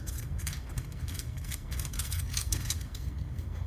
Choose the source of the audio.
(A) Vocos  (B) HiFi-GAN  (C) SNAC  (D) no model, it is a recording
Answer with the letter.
C